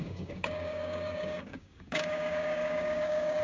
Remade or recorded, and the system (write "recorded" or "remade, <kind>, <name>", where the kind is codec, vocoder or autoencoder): remade, codec, DAC